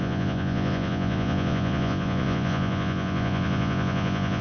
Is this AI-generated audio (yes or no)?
yes